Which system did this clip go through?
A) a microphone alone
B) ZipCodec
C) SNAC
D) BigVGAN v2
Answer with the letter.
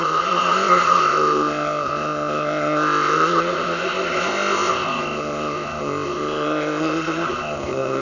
B